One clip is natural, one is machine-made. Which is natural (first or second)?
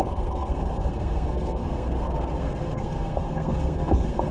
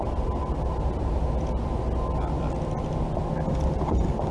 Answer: second